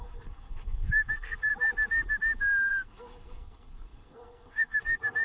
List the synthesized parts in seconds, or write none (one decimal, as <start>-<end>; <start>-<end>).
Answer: 0.0-1.5; 2.7-5.2